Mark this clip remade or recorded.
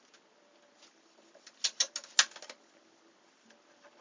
recorded